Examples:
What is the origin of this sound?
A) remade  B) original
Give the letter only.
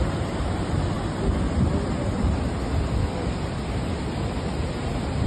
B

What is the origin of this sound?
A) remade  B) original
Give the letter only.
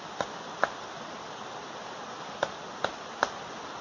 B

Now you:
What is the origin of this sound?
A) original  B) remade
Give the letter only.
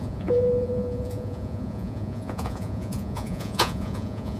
B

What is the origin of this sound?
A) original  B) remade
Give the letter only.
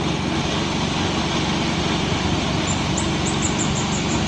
A